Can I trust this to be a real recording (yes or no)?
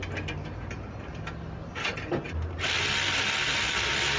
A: yes